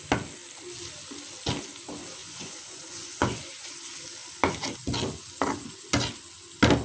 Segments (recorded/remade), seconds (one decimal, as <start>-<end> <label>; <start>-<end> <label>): 0.0-2.2 recorded; 2.2-3.7 remade; 3.7-6.8 recorded